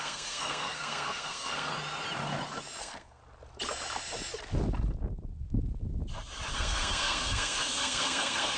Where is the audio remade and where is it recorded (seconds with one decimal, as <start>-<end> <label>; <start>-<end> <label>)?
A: 0.0-1.7 remade; 1.7-2.8 recorded; 2.8-3.2 remade; 3.2-6.5 recorded; 6.5-8.6 remade